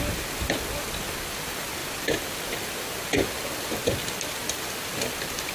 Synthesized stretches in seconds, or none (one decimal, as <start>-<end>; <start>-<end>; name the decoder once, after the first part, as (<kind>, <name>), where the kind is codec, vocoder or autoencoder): none